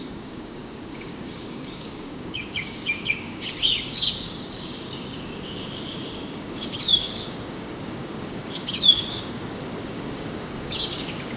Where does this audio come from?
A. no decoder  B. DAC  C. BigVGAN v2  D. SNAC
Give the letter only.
B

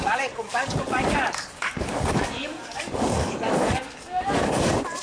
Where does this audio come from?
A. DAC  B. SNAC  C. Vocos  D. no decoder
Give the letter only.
A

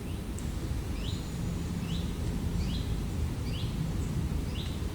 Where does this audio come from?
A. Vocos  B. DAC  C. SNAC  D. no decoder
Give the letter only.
D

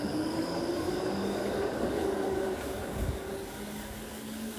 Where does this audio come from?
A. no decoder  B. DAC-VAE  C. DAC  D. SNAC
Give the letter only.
C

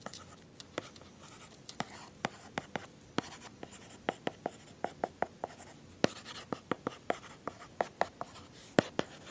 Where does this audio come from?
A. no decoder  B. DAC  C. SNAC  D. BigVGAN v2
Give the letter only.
A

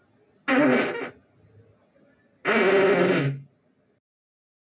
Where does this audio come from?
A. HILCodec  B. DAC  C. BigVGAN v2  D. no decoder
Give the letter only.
D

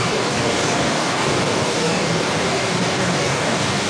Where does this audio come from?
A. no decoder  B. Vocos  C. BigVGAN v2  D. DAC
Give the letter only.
D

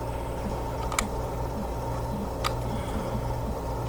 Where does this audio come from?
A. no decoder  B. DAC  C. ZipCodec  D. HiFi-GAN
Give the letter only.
A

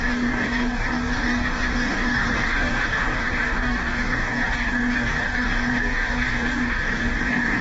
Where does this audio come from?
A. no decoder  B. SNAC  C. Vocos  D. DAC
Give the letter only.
D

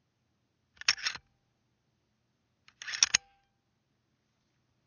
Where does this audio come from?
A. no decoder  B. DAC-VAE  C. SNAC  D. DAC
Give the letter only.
A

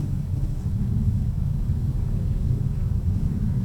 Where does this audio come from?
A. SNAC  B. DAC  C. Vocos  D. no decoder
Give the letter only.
B